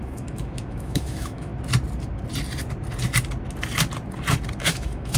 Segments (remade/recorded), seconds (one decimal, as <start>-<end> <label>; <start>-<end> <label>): 0.0-1.5 remade; 1.5-4.6 recorded; 4.6-5.2 remade